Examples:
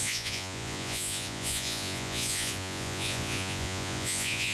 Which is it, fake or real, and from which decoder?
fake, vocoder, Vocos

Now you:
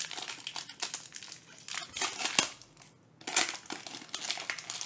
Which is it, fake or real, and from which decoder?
real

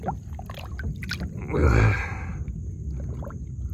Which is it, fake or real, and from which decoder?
real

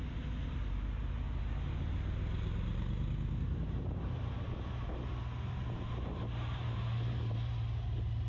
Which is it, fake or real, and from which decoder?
real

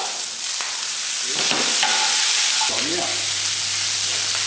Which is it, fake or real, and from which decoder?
real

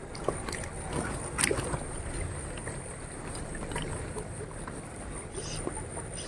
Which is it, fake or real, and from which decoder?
real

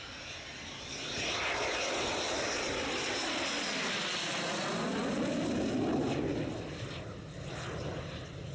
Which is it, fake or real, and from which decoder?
real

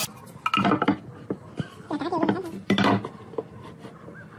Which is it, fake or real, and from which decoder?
real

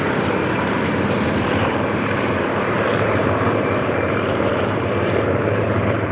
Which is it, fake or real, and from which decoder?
fake, vocoder, BigVGAN v2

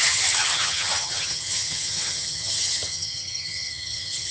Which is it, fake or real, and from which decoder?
fake, vocoder, HiFi-GAN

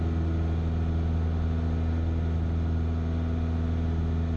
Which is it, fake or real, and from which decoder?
real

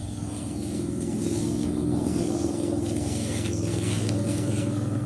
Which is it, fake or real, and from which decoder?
fake, codec, SNAC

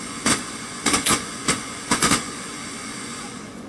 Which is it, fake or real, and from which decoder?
fake, vocoder, Vocos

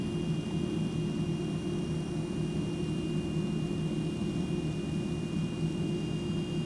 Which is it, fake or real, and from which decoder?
real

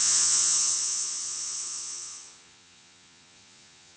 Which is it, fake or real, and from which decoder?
fake, vocoder, Vocos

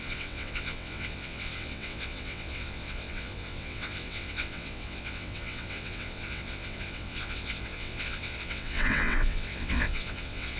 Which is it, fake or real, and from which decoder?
fake, vocoder, WaveNeXt